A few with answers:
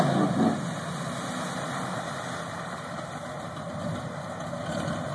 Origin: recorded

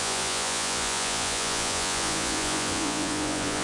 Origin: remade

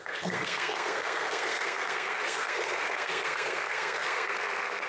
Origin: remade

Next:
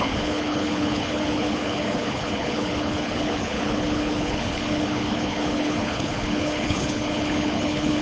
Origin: remade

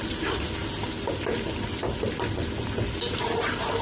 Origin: recorded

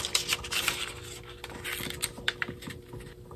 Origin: recorded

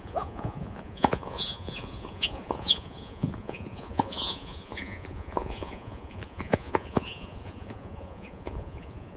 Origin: remade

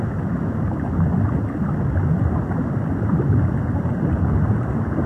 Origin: recorded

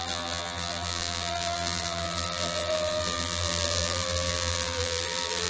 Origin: remade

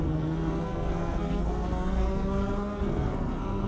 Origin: remade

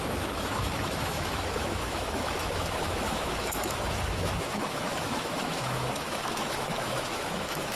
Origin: remade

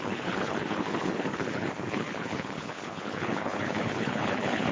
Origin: remade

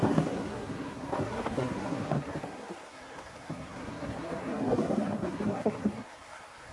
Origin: remade